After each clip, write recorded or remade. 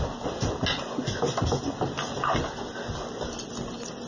recorded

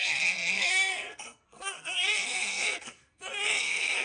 remade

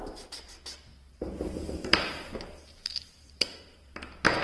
remade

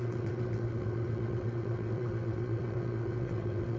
remade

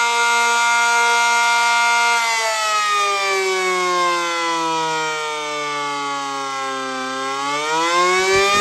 recorded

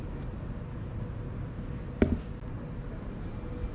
recorded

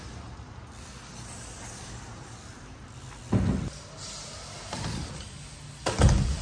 recorded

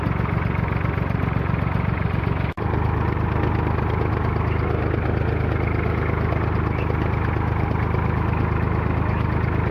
recorded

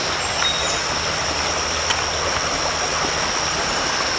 recorded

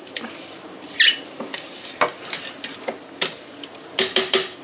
recorded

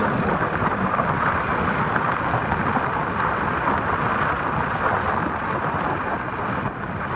remade